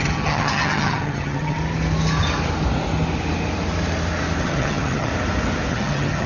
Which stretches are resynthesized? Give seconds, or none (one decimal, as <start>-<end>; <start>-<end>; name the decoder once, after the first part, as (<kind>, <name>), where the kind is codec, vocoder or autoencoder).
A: 0.0-1.6 (vocoder, HiFi-GAN); 4.4-5.1; 5.7-6.3